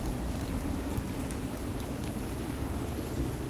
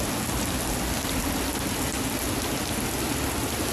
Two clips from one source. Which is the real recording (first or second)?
second